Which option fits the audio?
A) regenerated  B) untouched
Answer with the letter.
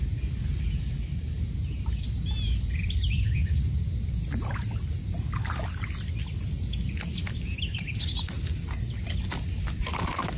B